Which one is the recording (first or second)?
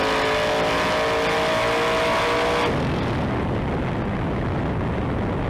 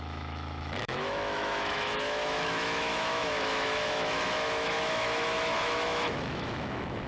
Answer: first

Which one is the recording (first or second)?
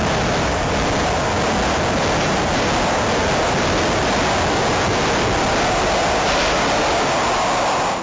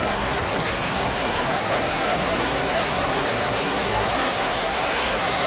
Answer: first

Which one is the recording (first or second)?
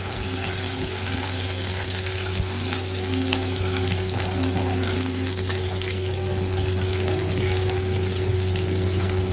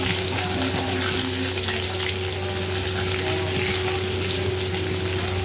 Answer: second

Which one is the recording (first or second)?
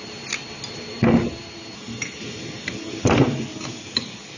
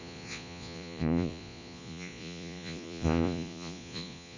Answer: first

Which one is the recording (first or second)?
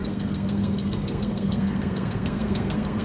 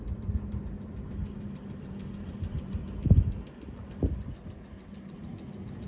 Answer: second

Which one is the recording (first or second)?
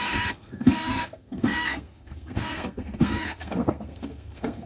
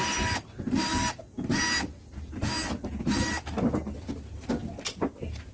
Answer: second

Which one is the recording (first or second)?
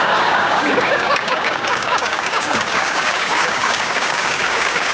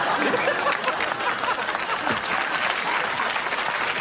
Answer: second